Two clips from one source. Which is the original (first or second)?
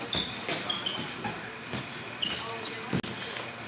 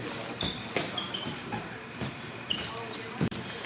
first